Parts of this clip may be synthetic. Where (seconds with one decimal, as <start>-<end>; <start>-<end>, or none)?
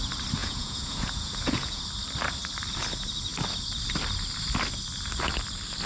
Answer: 0.4-1.8